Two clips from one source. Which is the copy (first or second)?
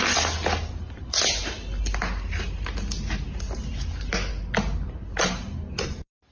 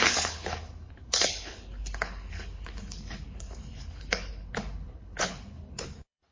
second